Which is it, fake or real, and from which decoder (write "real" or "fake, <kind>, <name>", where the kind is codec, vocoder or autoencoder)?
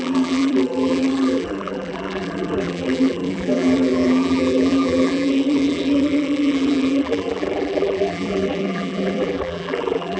fake, vocoder, BigVGAN v2